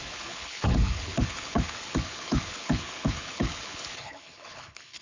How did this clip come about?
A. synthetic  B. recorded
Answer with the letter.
A